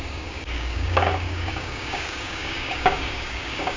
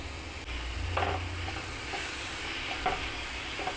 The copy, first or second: first